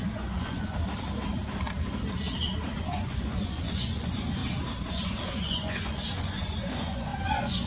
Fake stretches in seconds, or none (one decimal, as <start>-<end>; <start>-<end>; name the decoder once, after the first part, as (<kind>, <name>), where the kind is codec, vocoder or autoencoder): 0.0-0.8 (vocoder, Vocos); 2.9-4.4; 4.9-7.7